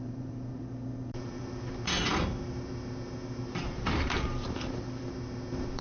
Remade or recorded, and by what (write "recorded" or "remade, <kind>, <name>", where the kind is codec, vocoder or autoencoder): remade, vocoder, BigVGAN v2